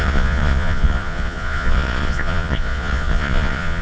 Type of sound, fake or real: fake